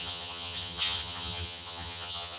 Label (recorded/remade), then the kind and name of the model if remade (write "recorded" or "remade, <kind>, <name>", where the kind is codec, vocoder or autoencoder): remade, vocoder, HiFi-GAN